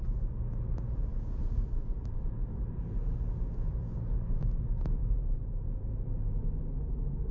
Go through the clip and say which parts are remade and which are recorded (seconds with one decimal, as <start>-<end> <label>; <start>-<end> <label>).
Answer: 0.0-1.1 recorded; 1.1-3.0 remade; 3.0-5.0 recorded; 5.0-5.9 remade; 5.9-7.3 recorded